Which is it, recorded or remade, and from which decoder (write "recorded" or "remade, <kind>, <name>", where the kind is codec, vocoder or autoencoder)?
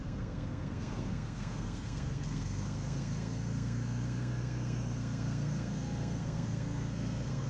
remade, codec, SNAC